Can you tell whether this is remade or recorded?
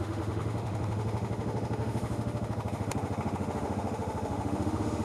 remade